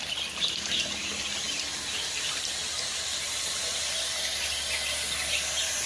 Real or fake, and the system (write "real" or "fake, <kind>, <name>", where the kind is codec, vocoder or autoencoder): real